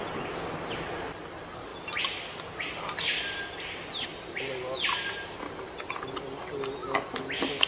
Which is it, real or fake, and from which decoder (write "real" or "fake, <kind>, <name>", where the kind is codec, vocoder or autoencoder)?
real